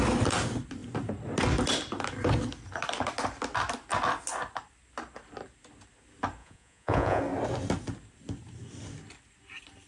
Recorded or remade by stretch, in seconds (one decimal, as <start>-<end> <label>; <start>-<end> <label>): 0.0-6.4 recorded; 6.4-7.2 remade; 7.2-9.9 recorded